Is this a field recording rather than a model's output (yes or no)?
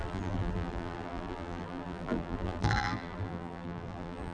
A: no